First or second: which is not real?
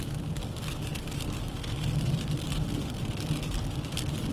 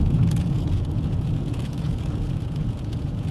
second